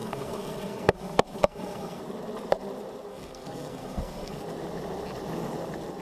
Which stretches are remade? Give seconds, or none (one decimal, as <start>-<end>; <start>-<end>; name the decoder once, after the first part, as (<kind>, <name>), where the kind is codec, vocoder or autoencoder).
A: 0.0-2.0 (codec, SNAC); 3.1-4.4